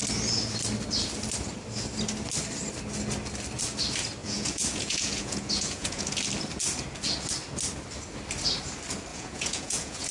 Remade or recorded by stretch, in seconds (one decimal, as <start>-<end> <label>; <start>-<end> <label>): 0.0-4.2 recorded; 4.2-6.2 remade; 6.2-9.1 recorded; 9.1-10.1 remade